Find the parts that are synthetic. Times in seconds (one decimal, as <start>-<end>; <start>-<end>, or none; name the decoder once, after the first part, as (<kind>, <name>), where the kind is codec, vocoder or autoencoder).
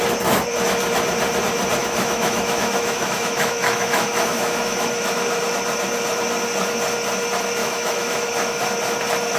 1.8-5.4 (autoencoder, DAC-VAE); 7.6-8.6